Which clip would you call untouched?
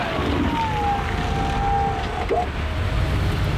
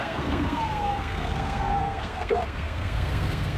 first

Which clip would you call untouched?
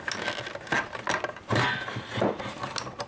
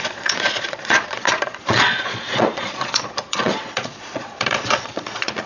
first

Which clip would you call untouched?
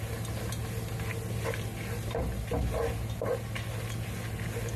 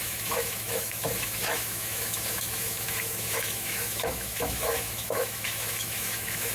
first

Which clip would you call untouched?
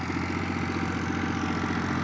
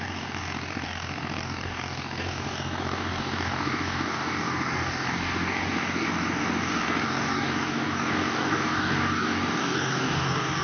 first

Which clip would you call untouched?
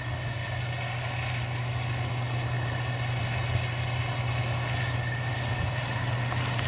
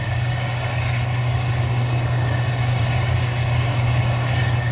first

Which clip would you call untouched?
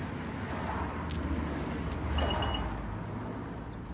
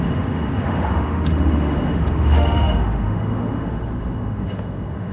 first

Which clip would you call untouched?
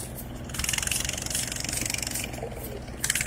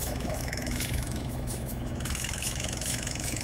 first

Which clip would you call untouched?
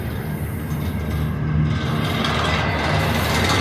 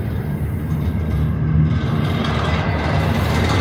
first